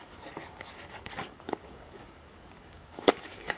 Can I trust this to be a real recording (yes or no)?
no